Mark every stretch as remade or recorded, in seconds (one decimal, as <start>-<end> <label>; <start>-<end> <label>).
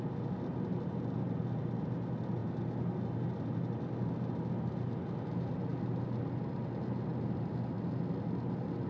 0.0-8.9 recorded